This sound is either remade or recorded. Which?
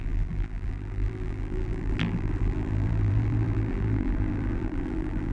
remade